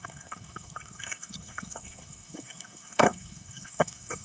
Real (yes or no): no